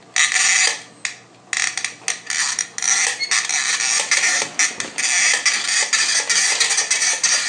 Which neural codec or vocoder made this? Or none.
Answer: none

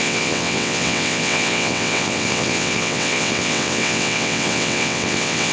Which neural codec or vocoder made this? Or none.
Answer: vocoder, WaveNeXt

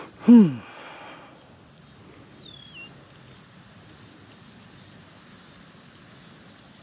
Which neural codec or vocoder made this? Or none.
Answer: none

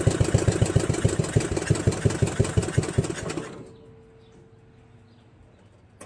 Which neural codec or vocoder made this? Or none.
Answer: none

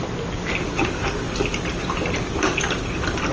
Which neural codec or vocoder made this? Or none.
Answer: none